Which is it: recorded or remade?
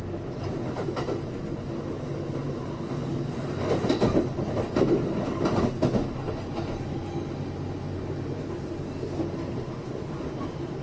recorded